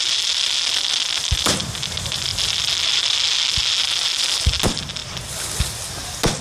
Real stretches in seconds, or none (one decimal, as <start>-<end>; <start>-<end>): 0.0-6.4